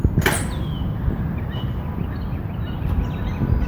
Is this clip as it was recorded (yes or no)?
yes